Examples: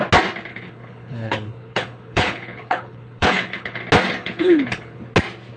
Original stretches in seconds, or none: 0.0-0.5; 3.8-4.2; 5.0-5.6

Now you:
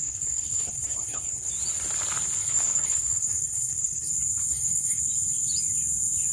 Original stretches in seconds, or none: 1.5-2.4; 4.1-4.5; 5.0-6.3

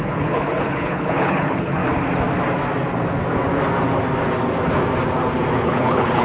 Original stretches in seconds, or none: 1.8-5.5